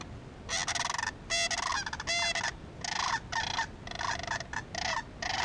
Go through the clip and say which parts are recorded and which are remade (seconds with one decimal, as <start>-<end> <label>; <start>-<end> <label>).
0.0-5.4 recorded